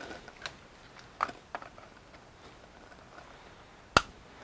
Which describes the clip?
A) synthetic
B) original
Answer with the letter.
B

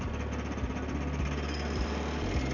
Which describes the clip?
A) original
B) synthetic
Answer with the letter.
A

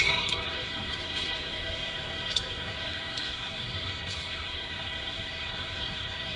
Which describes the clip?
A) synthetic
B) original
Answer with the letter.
A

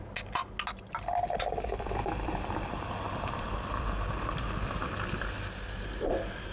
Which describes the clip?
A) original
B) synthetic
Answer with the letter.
A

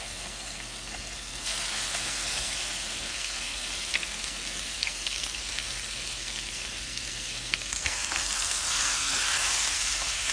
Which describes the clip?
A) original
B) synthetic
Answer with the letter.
B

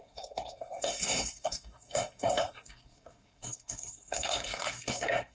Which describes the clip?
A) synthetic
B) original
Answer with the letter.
A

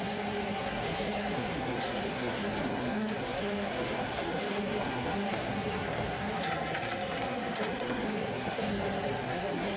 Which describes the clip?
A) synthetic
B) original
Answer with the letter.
A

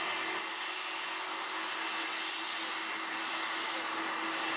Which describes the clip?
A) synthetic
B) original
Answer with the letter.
B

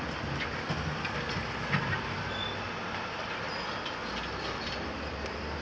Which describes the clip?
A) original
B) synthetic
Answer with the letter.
A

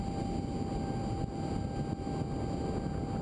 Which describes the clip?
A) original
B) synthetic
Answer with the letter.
A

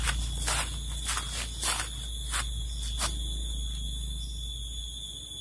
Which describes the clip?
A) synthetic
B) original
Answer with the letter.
B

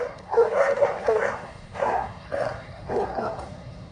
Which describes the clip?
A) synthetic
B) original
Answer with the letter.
A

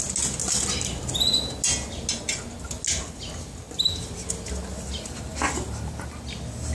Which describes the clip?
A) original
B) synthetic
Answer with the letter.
A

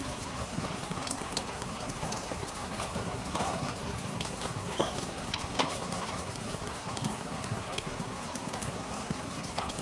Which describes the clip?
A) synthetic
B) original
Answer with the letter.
A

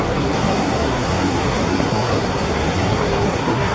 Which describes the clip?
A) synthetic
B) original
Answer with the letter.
A